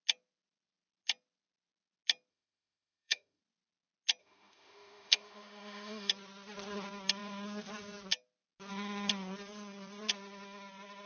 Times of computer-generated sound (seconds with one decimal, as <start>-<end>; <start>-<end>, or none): 2.3-3.4; 4.2-6.1